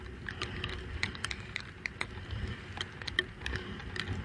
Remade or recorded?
recorded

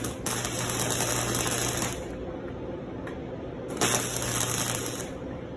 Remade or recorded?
recorded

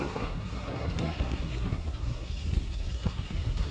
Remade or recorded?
remade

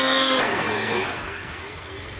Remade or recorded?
remade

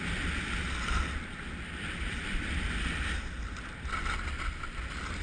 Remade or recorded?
recorded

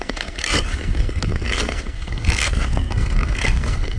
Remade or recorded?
remade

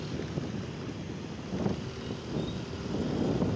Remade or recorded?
recorded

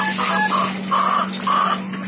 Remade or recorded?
recorded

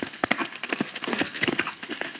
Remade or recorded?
remade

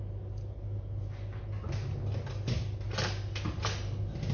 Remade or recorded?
recorded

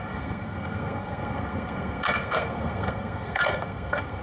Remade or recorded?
remade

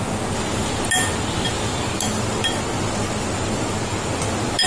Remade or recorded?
recorded